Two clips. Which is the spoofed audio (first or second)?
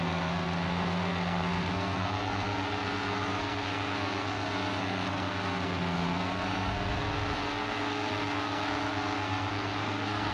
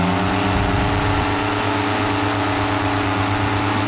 first